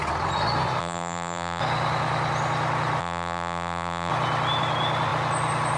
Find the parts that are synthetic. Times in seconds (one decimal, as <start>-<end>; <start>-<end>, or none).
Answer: 0.8-1.6; 3.0-4.1